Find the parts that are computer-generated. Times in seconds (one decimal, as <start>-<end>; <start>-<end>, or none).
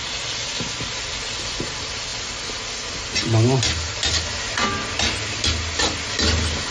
none